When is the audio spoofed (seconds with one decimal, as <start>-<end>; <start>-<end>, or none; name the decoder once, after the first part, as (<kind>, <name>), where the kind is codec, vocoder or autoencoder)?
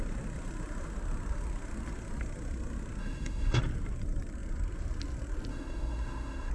3.0-3.6 (autoencoder, DAC-VAE); 5.5-6.5